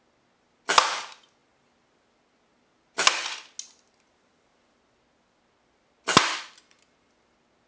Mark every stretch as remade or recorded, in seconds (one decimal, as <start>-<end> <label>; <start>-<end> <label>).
0.0-7.7 recorded